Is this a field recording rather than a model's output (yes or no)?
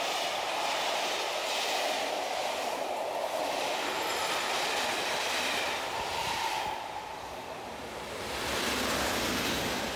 yes